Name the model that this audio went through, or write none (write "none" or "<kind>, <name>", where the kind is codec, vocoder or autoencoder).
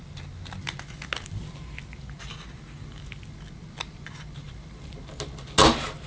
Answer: none